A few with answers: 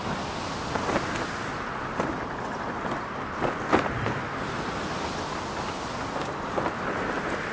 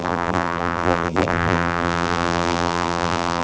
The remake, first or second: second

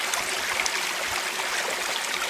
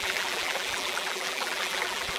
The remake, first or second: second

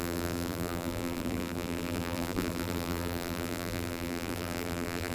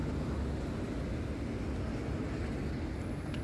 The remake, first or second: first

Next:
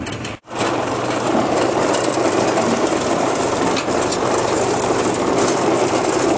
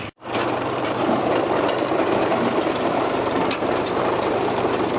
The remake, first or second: second